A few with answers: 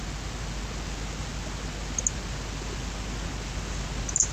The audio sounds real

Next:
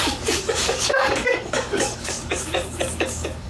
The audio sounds fake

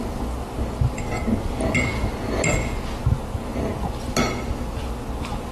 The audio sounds real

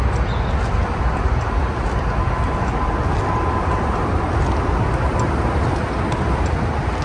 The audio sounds real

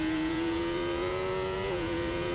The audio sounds fake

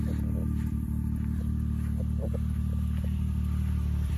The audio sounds real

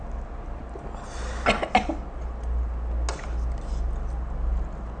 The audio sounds real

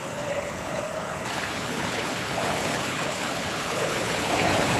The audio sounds fake